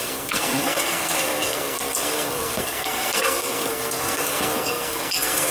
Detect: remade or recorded remade